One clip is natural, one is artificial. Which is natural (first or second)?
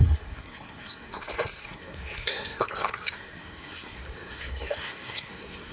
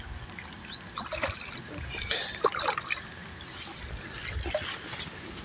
second